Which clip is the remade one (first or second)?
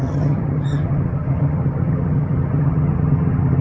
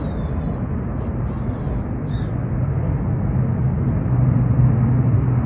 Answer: first